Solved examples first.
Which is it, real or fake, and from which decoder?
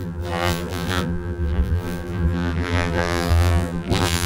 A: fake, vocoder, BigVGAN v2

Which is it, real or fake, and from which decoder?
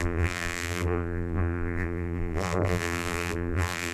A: fake, vocoder, BigVGAN v2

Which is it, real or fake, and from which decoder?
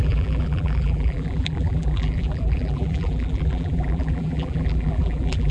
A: fake, vocoder, BigVGAN v2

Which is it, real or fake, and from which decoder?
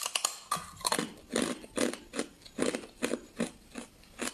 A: real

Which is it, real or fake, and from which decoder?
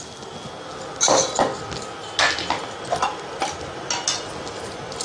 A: real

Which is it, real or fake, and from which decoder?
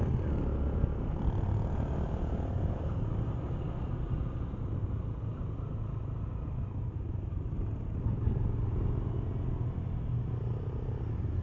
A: real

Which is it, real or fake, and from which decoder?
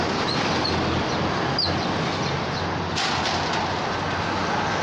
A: real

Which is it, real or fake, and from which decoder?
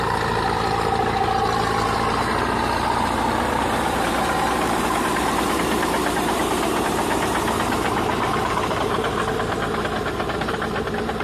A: fake, vocoder, BigVGAN v2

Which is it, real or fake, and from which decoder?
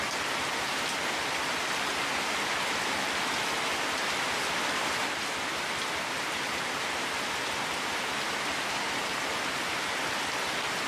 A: real